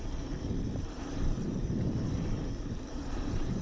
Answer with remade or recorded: remade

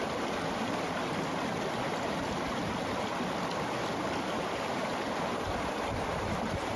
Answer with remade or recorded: remade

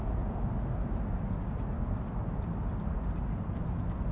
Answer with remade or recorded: recorded